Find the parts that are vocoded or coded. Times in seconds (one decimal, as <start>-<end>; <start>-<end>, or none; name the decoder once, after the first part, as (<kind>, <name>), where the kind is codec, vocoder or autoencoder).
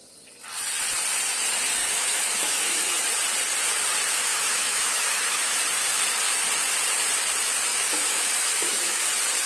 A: 1.8-3.1 (autoencoder, DAC-VAE); 4.3-5.6; 7.7-9.1